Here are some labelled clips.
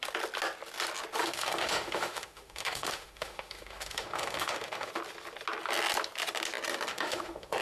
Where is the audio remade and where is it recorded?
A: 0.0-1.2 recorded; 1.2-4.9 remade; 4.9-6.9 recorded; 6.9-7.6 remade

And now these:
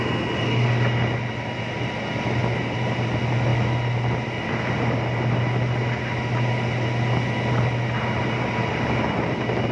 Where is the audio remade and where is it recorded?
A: 0.0-9.7 recorded

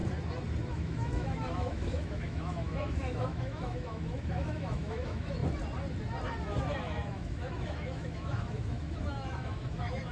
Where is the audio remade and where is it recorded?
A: 0.0-0.7 recorded; 0.7-5.4 remade; 5.4-6.6 recorded; 6.6-10.1 remade

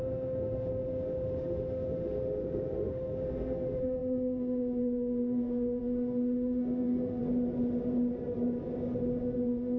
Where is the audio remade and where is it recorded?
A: 0.0-7.2 remade; 7.2-9.2 recorded; 9.2-9.8 remade

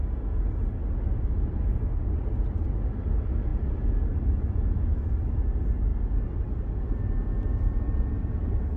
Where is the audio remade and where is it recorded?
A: 0.0-8.8 recorded

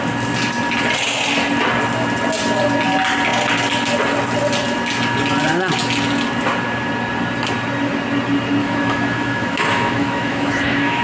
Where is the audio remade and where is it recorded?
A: 0.0-8.6 recorded; 8.6-11.0 remade